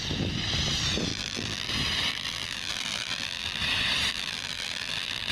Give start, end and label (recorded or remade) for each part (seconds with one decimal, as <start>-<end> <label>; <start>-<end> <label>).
0.0-1.1 recorded; 1.1-1.7 remade; 1.7-2.1 recorded; 2.1-3.6 remade; 3.6-4.1 recorded; 4.1-5.3 remade